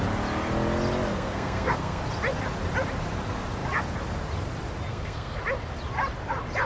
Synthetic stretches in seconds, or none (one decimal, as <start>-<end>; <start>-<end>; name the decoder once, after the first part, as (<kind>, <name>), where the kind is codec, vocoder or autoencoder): 1.1-2.0 (codec, SNAC); 4.9-5.4